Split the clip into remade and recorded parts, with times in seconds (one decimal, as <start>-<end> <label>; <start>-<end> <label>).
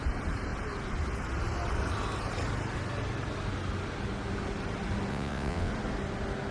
0.0-5.1 recorded; 5.1-5.7 remade; 5.7-6.5 recorded